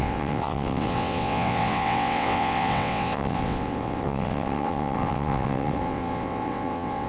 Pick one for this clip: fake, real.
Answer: fake